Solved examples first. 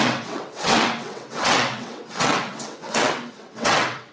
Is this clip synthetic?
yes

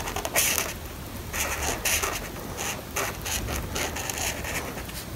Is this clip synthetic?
no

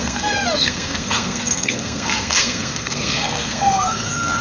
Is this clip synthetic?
yes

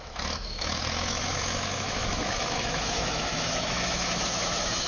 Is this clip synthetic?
yes